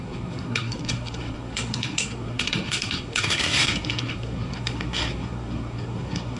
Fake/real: fake